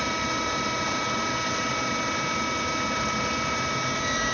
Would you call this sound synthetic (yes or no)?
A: no